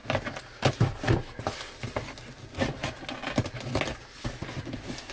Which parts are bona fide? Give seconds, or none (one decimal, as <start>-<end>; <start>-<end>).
0.0-5.1